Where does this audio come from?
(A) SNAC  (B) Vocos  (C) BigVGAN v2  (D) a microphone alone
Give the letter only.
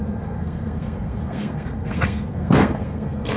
A